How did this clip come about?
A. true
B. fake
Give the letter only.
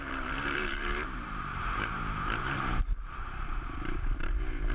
B